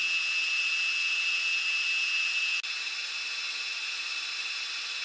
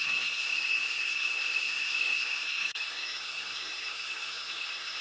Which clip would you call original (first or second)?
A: first